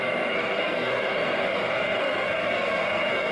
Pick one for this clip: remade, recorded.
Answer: remade